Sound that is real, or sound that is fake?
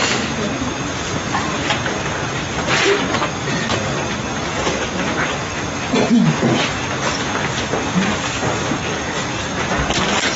real